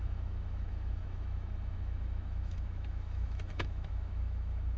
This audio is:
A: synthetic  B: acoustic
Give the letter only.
A